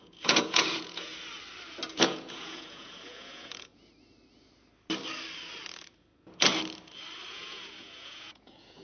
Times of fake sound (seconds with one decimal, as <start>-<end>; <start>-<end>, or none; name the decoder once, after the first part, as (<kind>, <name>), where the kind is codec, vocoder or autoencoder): 0.0-1.1 (vocoder, Vocos); 2.0-3.7; 7.3-8.8